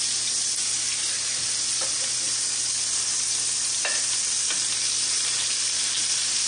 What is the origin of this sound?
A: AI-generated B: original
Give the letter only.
B